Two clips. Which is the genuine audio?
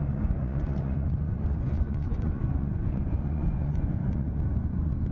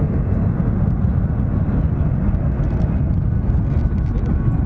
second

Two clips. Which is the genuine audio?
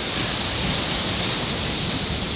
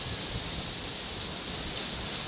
second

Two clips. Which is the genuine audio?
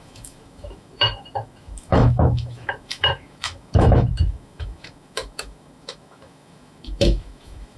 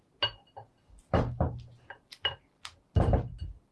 second